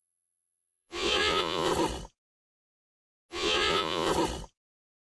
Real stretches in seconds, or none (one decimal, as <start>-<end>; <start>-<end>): 1.7-3.3; 4.1-5.1